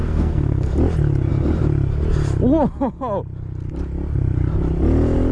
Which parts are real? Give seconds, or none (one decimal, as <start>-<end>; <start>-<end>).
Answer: 0.7-5.3